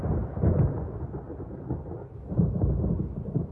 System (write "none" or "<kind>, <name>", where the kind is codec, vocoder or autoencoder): none